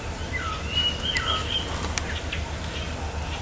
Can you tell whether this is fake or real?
real